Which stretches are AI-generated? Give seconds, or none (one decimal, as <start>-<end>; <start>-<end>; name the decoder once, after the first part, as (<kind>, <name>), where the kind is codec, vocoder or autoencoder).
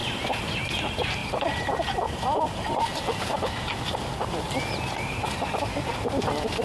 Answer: 0.0-6.6 (vocoder, BigVGAN v2)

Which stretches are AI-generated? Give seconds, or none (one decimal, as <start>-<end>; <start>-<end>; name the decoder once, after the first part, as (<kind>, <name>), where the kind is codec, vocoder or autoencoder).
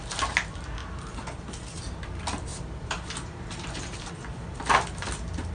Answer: 0.8-2.0 (vocoder, BigVGAN v2); 2.5-4.1